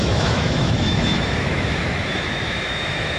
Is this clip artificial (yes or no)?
yes